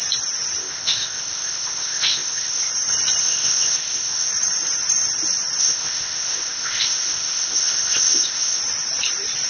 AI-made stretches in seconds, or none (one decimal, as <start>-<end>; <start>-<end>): 0.6-2.7; 3.2-4.3; 5.6-8.6